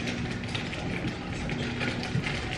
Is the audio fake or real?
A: real